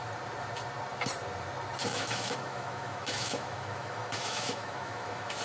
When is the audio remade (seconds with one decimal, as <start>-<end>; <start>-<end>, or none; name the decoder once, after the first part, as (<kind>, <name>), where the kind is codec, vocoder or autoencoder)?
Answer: 1.9-5.4 (autoencoder, DAC-VAE)